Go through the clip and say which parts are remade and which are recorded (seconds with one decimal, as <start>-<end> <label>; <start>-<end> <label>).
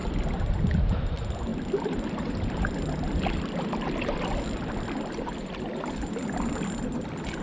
0.0-1.5 recorded; 1.5-5.3 remade; 5.3-7.4 recorded